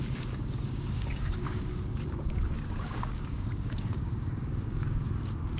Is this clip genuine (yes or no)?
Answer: no